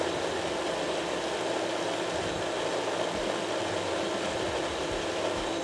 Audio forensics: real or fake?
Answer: real